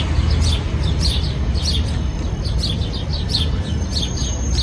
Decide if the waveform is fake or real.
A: real